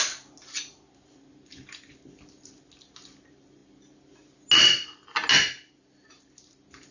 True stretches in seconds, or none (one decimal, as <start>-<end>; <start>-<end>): 0.0-6.9